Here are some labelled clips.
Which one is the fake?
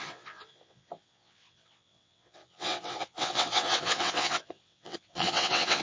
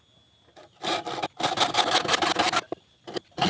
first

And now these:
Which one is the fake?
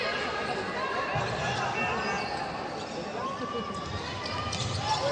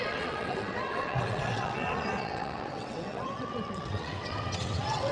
second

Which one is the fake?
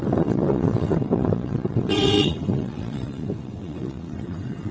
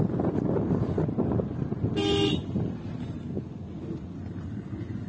first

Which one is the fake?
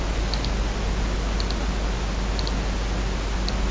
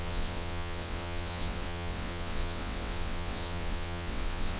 second